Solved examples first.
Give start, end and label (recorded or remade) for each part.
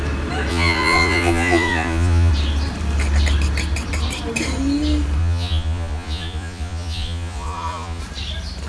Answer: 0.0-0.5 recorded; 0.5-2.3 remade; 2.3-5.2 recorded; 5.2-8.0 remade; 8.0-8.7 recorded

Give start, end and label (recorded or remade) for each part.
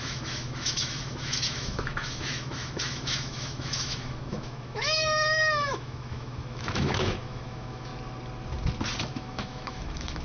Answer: 0.0-7.9 remade; 7.9-9.0 recorded; 9.0-10.2 remade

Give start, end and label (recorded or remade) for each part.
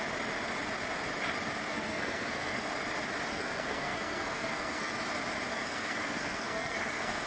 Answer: 0.0-1.7 recorded; 1.7-2.7 remade; 2.7-3.3 recorded; 3.3-4.9 remade; 4.9-5.5 recorded; 5.5-7.3 remade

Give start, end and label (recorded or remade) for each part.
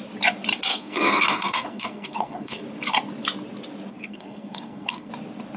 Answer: 0.0-0.7 recorded; 0.7-2.6 remade; 2.6-3.9 recorded; 3.9-5.1 remade; 5.1-5.6 recorded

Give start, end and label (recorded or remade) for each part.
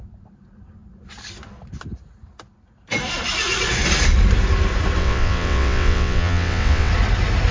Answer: 0.0-5.0 recorded; 5.0-6.9 remade; 6.9-7.5 recorded